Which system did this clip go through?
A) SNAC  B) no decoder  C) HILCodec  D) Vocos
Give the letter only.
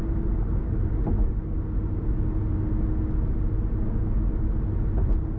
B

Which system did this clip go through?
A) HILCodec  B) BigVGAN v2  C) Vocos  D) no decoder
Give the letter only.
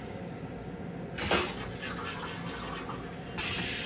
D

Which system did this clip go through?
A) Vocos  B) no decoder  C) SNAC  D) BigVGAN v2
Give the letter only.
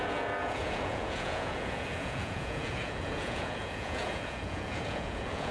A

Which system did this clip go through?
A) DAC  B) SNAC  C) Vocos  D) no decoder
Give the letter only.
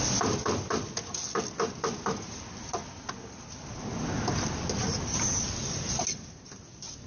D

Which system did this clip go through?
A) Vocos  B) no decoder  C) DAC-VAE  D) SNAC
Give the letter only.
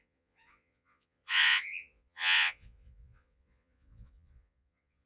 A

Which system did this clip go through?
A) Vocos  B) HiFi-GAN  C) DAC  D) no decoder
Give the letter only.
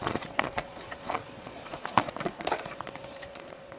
A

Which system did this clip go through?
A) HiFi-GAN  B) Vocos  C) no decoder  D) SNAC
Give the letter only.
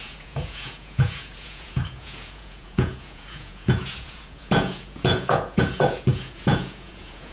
B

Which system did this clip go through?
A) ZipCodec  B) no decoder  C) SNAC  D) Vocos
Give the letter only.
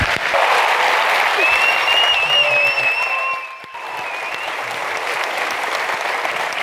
B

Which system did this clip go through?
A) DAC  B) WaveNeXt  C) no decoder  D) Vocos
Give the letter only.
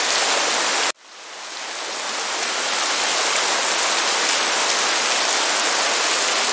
C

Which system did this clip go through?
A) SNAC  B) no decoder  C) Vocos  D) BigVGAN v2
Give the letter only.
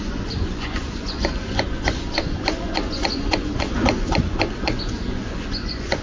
C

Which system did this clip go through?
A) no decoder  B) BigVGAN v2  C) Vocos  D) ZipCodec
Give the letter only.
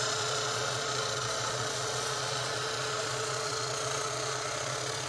C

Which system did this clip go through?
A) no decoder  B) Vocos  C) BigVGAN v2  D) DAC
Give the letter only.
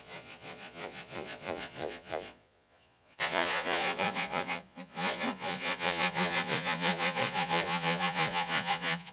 B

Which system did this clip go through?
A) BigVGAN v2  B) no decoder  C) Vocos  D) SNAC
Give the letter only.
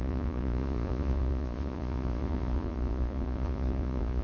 C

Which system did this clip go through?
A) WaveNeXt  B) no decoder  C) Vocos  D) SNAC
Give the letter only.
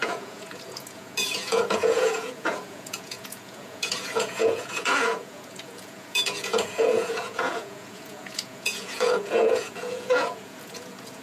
C